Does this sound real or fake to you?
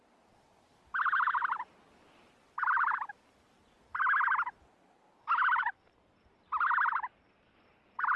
real